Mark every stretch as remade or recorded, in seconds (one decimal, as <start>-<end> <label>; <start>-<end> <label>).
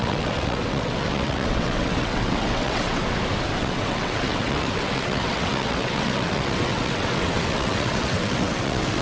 0.0-3.0 remade; 3.0-3.6 recorded; 3.6-9.0 remade